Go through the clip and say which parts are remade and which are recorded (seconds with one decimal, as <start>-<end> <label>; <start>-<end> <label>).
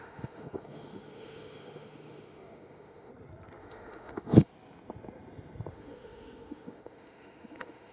0.0-3.1 remade; 3.1-3.6 recorded; 3.6-4.5 remade; 4.5-5.7 recorded; 5.7-7.9 remade